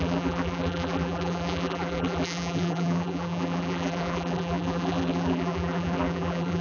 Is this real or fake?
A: fake